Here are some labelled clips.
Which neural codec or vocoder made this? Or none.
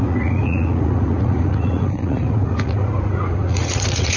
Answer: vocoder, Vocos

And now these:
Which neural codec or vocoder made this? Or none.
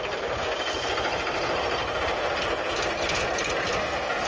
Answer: none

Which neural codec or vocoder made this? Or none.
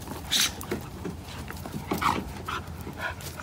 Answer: none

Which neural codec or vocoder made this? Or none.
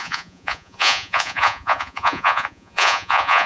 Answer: vocoder, Vocos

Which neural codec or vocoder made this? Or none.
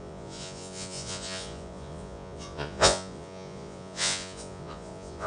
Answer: vocoder, Vocos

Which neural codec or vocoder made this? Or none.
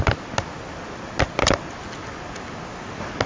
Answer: none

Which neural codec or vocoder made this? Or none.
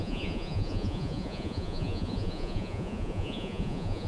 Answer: vocoder, Vocos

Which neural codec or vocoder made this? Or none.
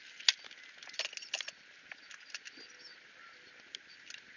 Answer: none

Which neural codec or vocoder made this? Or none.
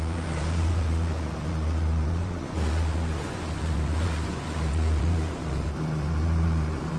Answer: vocoder, Vocos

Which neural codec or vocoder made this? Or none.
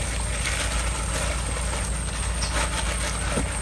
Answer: none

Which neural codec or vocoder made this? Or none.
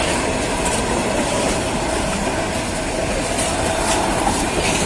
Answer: none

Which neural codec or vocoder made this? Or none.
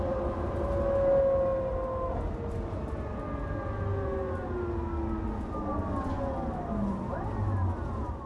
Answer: none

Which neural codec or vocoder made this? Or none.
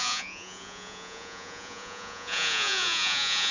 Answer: vocoder, Vocos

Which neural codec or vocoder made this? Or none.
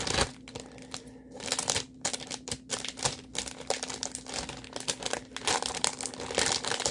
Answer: none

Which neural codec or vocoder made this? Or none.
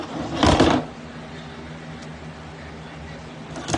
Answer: none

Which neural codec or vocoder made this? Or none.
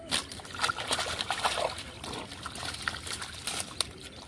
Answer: none